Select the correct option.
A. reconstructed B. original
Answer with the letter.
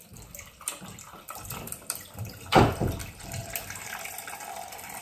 A